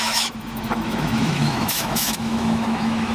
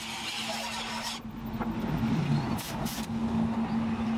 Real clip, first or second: second